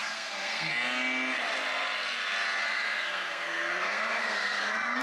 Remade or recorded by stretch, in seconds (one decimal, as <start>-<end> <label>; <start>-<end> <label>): 0.0-0.7 remade; 0.7-2.6 recorded; 2.6-5.0 remade